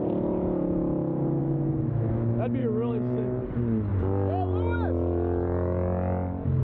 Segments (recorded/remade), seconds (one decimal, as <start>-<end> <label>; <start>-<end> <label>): 0.0-1.4 recorded; 1.4-2.1 remade; 2.1-2.6 recorded; 2.6-3.4 remade; 3.4-6.6 recorded